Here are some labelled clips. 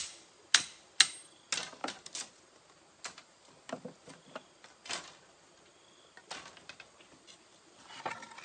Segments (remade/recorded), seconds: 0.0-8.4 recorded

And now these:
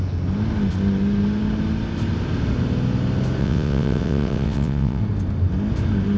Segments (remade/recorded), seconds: 0.0-3.4 recorded; 3.4-5.0 remade; 5.0-6.2 recorded

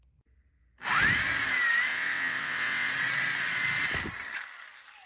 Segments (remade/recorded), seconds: 0.0-1.9 recorded; 1.9-2.9 remade; 2.9-5.1 recorded

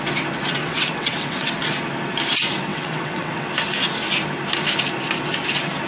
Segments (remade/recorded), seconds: 0.0-0.6 recorded; 0.6-1.5 remade; 1.5-2.7 recorded; 2.7-3.5 remade; 3.5-5.9 recorded

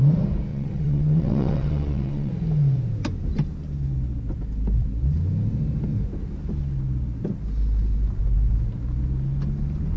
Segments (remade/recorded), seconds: 0.0-0.5 recorded; 0.5-2.3 remade; 2.3-10.0 recorded

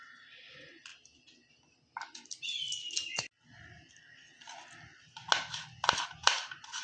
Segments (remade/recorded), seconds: 0.0-6.8 recorded

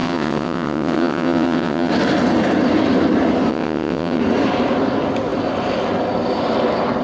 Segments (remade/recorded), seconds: 0.0-1.9 remade; 1.9-3.5 recorded; 3.5-4.2 remade; 4.2-7.0 recorded